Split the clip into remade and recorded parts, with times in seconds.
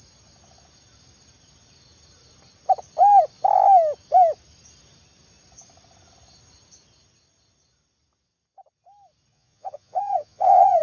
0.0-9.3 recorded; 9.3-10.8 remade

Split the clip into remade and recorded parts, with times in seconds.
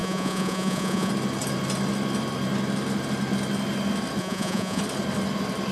0.0-1.1 remade; 1.1-4.2 recorded; 4.2-4.8 remade; 4.8-5.7 recorded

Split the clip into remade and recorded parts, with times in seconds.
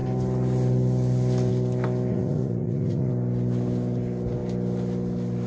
0.0-2.1 recorded; 2.1-3.1 remade; 3.1-5.5 recorded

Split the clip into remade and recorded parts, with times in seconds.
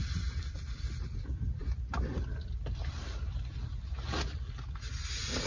0.0-5.5 recorded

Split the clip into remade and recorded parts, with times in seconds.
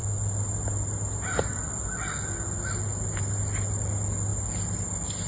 0.0-5.3 recorded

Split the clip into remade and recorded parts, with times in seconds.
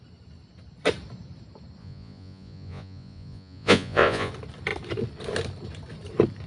0.0-1.8 recorded; 1.8-4.3 remade; 4.3-6.5 recorded